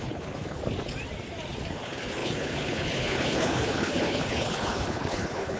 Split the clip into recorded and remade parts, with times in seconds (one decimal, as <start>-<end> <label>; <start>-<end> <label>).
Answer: 0.0-0.6 remade; 0.6-1.7 recorded; 1.7-5.6 remade